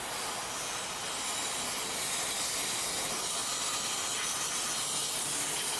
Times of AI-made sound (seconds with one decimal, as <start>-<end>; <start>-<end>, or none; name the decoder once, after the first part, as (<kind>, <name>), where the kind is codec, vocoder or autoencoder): none